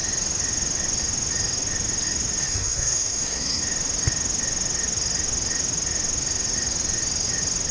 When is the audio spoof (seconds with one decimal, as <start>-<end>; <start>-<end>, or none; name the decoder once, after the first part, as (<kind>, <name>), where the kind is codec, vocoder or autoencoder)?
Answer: 2.4-3.6 (codec, SNAC)

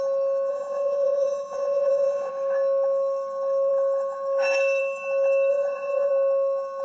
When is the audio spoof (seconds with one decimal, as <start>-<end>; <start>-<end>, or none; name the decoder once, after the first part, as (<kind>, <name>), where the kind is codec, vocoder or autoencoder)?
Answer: 0.5-2.3 (vocoder, Vocos); 5.5-6.1